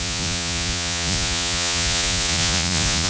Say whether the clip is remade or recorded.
remade